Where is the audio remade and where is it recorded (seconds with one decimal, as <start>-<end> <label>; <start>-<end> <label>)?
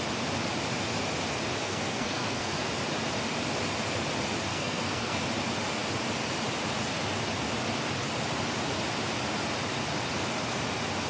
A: 0.0-1.6 recorded; 1.6-2.7 remade; 2.7-4.5 recorded; 4.5-5.2 remade; 5.2-11.1 recorded